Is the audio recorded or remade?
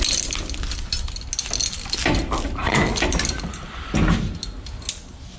recorded